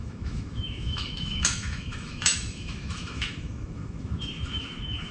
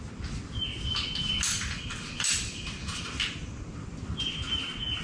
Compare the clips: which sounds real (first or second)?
second